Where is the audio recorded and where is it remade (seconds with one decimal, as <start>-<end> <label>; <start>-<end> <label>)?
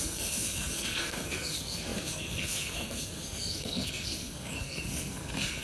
0.0-5.6 remade